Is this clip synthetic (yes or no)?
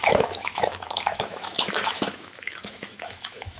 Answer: yes